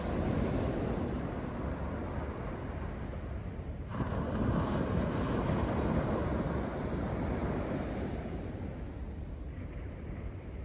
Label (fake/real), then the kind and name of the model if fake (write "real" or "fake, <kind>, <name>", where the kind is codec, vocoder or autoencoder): real